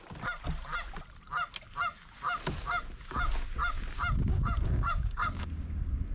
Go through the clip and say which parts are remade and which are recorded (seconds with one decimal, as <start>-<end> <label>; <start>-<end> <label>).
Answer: 0.0-4.3 recorded; 4.3-6.1 remade